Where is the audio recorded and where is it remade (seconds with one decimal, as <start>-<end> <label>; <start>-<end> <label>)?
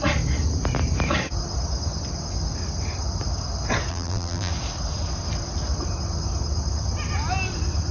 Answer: 0.0-3.9 recorded; 3.9-4.5 remade; 4.5-7.9 recorded